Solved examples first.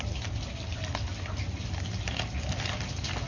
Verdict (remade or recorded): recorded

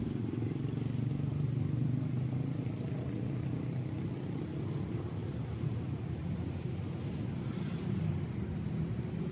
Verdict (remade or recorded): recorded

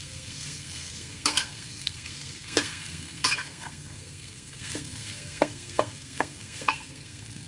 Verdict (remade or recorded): remade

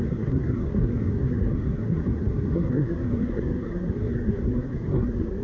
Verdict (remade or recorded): remade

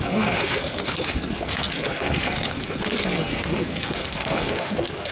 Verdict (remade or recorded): remade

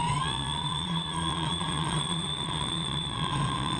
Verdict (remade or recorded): remade